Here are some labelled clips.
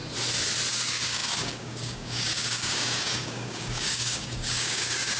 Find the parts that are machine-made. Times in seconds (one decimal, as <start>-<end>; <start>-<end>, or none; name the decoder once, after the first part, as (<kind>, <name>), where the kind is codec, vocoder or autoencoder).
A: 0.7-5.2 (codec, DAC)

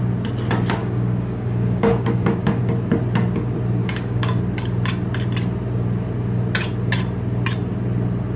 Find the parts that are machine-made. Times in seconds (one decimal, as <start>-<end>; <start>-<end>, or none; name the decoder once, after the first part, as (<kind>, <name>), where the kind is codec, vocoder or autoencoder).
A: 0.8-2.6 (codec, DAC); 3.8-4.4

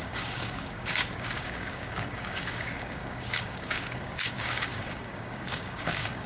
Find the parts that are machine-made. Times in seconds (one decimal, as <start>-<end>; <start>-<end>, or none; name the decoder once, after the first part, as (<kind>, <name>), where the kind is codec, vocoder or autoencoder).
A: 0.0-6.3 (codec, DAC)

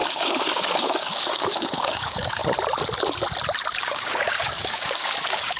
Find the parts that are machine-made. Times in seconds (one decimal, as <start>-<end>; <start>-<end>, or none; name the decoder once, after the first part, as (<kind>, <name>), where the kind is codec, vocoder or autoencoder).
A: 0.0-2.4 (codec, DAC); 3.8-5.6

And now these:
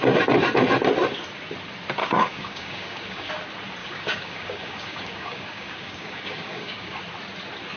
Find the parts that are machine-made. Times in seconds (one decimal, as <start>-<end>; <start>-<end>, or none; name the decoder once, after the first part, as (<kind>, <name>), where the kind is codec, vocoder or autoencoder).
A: 2.0-3.3 (codec, DAC); 3.8-7.0

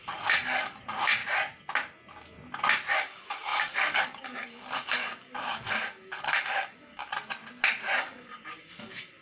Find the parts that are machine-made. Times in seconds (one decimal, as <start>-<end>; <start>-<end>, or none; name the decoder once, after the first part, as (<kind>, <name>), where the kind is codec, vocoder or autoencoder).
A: 0.0-1.2 (codec, DAC); 3.0-7.1; 8.0-9.2

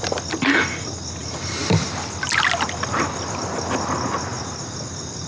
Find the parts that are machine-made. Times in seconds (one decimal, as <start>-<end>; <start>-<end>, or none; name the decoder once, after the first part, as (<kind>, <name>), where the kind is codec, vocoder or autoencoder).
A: none